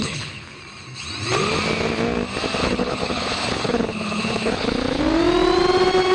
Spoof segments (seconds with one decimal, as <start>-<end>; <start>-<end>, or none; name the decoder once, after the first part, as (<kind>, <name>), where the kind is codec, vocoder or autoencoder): 0.0-0.6 (codec, HILCodec); 2.6-5.0

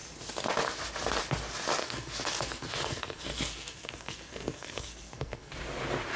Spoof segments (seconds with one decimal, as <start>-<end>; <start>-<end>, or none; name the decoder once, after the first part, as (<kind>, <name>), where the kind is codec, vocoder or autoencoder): 1.8-5.5 (codec, SNAC)